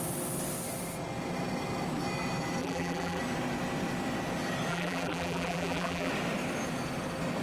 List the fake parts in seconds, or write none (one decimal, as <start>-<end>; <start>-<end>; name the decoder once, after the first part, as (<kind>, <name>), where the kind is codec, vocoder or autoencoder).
2.6-3.2 (vocoder, BigVGAN v2); 4.7-6.1